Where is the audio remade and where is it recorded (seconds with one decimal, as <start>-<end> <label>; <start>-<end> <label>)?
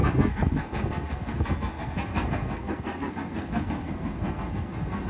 0.0-5.1 remade